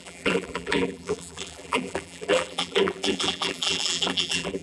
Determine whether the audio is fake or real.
fake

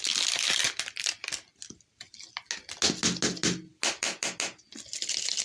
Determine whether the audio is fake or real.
real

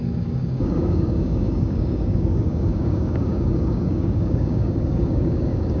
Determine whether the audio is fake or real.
fake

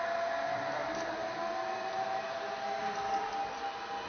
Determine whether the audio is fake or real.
real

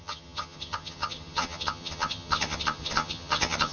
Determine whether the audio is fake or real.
fake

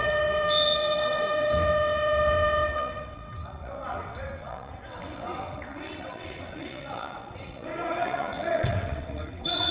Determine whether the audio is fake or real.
fake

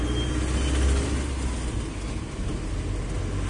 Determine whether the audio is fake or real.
real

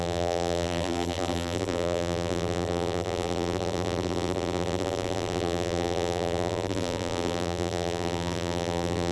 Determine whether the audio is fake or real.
fake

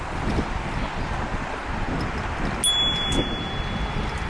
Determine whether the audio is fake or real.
real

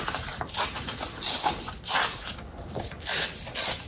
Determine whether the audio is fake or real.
fake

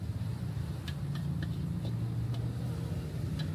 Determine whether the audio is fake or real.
real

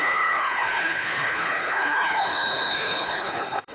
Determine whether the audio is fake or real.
fake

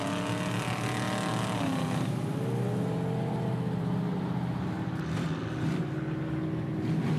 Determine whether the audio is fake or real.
real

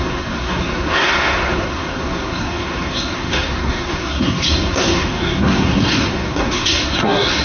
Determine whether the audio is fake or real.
fake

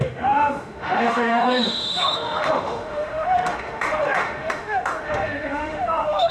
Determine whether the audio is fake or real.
fake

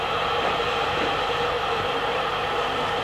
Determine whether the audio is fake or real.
fake